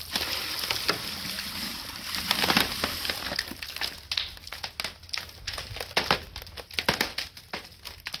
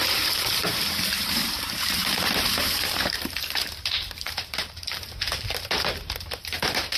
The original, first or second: first